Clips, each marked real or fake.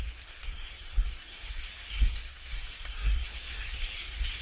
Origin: fake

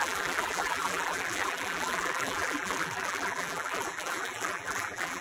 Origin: fake